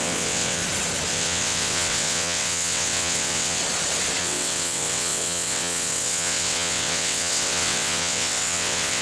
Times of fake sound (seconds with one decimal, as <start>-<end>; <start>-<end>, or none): 0.0-0.6; 1.1-3.6; 4.2-9.0